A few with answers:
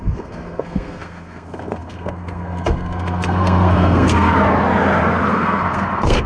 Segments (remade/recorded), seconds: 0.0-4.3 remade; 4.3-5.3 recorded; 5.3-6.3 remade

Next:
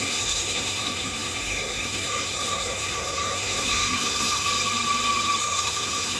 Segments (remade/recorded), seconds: 0.0-4.5 remade; 4.5-5.4 recorded; 5.4-6.2 remade

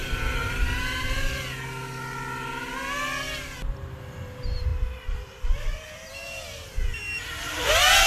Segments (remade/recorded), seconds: 0.0-8.1 recorded

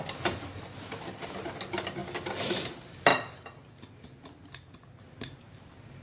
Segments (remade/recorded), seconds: 0.0-2.0 recorded; 2.0-2.7 remade; 2.7-6.0 recorded

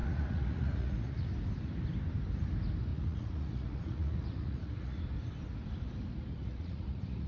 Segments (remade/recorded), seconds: 0.0-1.3 remade; 1.3-2.9 recorded; 2.9-5.0 remade; 5.0-6.3 recorded; 6.3-7.3 remade

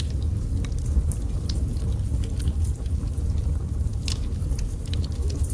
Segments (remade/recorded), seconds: 0.0-3.9 recorded; 3.9-4.9 remade; 4.9-5.5 recorded

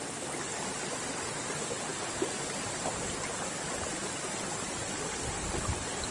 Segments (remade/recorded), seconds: 0.0-6.1 recorded